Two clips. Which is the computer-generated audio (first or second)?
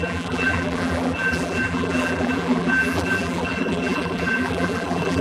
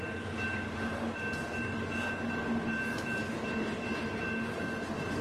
first